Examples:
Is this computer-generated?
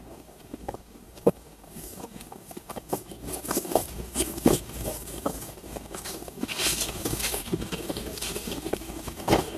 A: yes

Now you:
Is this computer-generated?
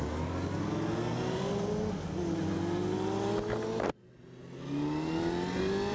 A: no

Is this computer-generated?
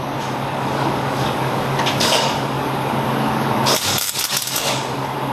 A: yes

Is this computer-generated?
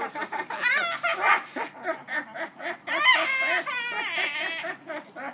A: no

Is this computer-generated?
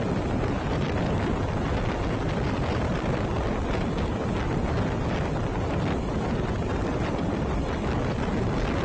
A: no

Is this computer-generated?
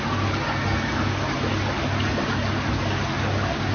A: no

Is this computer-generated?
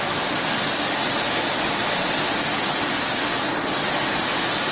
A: no